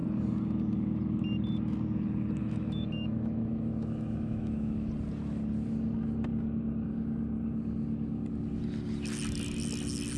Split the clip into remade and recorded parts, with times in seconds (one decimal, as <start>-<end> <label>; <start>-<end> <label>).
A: 0.0-2.4 recorded; 2.4-4.9 remade; 4.9-10.2 recorded